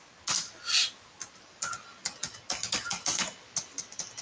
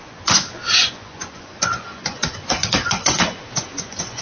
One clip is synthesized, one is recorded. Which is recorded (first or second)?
first